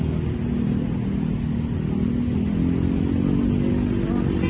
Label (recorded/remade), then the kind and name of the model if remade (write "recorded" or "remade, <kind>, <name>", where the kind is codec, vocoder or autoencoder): recorded